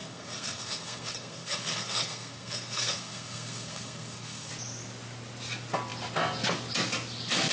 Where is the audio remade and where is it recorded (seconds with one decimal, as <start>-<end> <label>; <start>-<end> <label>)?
0.0-4.5 remade; 4.5-7.5 recorded